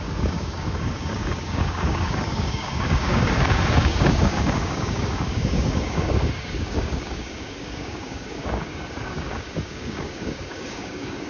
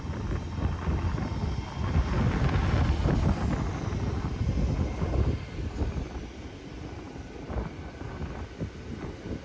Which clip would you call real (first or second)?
second